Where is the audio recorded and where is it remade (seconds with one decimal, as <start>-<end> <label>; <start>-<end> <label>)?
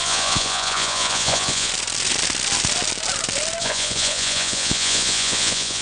0.0-1.7 remade; 1.7-3.6 recorded; 3.6-5.8 remade